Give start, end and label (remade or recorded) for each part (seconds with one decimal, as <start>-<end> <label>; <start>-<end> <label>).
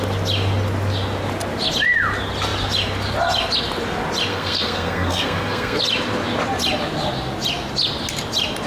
0.0-4.3 recorded; 4.3-5.8 remade; 5.8-8.7 recorded